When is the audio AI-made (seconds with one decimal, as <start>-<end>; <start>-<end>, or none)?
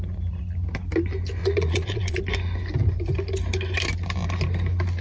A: 1.4-2.2